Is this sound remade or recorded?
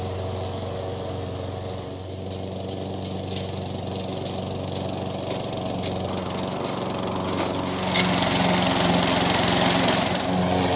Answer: recorded